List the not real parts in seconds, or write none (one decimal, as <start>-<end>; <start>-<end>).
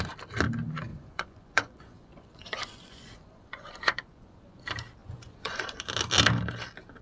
0.9-4.6; 5.0-5.8